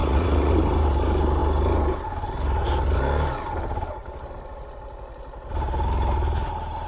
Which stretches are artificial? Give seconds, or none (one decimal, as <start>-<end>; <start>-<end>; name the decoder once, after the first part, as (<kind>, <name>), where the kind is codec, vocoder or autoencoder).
0.0-0.5 (vocoder, Vocos)